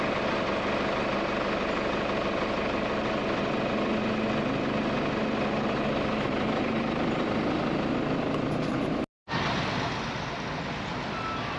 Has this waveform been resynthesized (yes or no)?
no